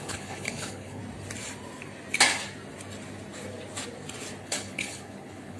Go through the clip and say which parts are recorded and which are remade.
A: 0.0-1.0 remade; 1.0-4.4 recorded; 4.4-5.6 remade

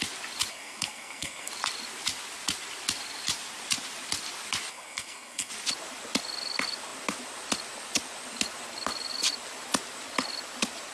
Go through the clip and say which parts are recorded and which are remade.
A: 0.0-0.5 recorded; 0.5-1.5 remade; 1.5-4.7 recorded; 4.7-5.5 remade; 5.5-10.9 recorded